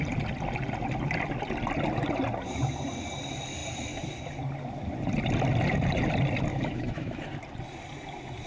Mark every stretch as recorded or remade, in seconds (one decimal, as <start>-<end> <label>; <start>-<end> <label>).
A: 0.0-6.5 recorded; 6.5-7.2 remade; 7.2-8.5 recorded